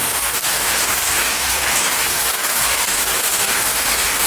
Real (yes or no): no